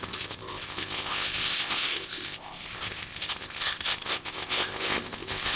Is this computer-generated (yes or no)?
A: yes